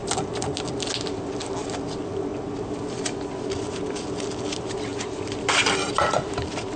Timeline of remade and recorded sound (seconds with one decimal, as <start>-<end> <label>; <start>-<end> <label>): 0.0-6.8 recorded